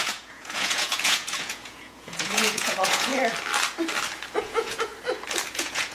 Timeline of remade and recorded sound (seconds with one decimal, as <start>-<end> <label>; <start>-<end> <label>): 0.0-3.1 remade; 3.1-4.4 recorded; 4.4-4.9 remade; 4.9-5.5 recorded; 5.5-5.9 remade